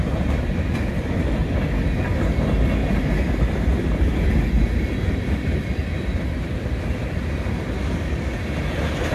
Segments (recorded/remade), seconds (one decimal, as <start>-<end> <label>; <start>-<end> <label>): 0.0-1.3 remade; 1.3-2.8 recorded; 2.8-7.7 remade; 7.7-9.1 recorded